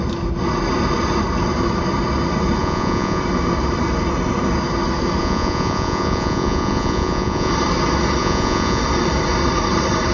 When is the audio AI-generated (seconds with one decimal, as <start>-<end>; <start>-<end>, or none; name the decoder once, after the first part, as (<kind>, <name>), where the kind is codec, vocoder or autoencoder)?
2.6-3.2 (vocoder, Vocos); 5.2-7.5; 8.2-8.8